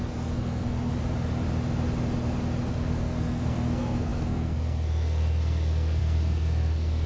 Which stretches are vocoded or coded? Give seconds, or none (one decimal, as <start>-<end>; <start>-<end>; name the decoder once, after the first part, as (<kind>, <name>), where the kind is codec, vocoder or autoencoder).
0.0-0.9 (codec, SNAC); 2.7-7.1